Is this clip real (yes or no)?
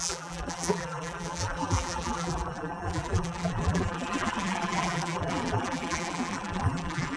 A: no